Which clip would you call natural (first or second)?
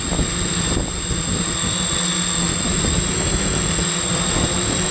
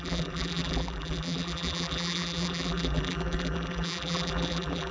first